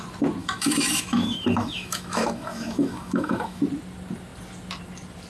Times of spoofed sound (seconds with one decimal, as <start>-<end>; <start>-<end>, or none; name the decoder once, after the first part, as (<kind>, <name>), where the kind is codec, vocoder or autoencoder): 0.4-3.6 (autoencoder, DAC-VAE)